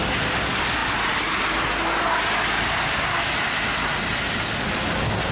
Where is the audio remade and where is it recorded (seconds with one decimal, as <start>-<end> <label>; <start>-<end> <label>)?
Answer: 0.0-5.3 recorded